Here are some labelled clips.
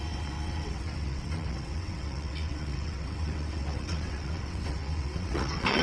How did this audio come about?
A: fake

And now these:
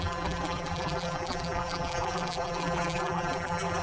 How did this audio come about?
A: fake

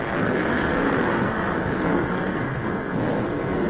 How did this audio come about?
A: fake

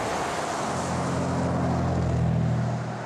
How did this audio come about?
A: real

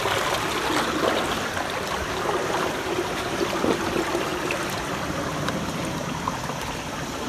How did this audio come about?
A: real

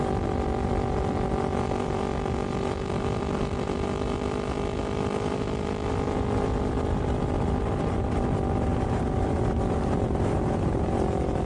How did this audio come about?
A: real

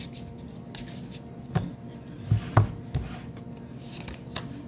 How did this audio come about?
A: real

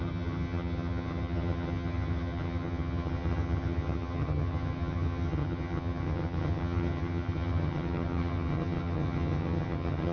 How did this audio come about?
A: fake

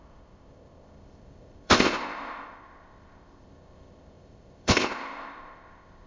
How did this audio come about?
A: fake